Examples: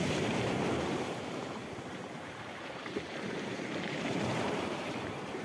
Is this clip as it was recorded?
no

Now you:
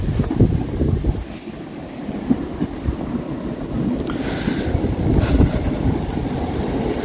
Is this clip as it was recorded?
yes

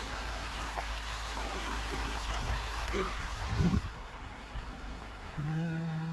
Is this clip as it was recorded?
no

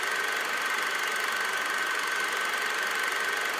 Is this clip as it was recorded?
yes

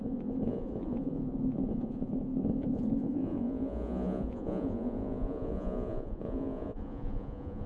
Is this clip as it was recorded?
no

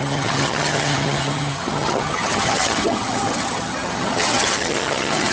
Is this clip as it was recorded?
no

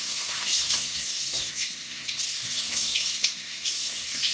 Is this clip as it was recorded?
no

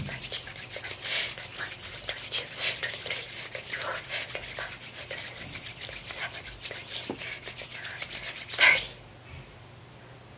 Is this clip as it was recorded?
yes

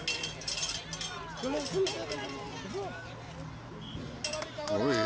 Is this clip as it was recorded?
yes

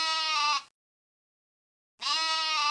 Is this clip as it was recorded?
yes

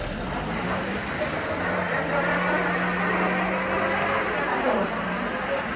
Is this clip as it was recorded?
yes